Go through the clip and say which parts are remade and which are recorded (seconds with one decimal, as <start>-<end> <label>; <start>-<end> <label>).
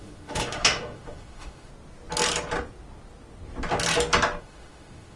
0.0-1.7 remade; 1.7-4.4 recorded; 4.4-5.2 remade